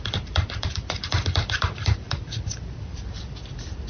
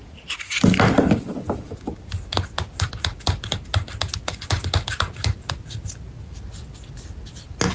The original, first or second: second